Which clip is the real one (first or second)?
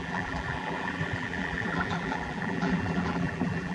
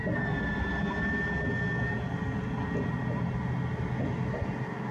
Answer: second